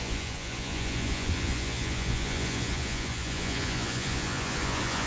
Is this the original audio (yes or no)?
no